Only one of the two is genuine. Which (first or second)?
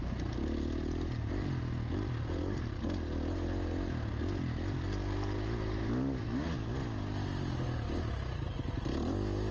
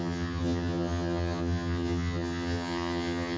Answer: first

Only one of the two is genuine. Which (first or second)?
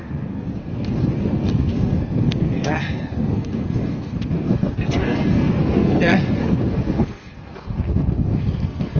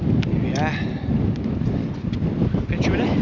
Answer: second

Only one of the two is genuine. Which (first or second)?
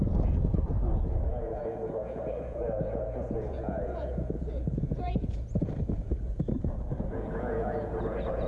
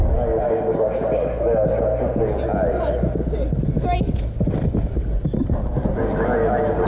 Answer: second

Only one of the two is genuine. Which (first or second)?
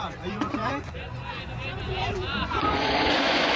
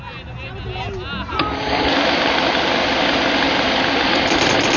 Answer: second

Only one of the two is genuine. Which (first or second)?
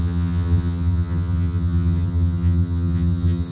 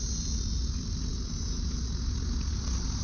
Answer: second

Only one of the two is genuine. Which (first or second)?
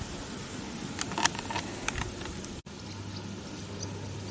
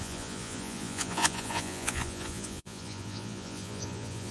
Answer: first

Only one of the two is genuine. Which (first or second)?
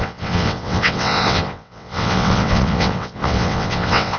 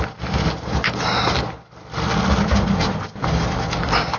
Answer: second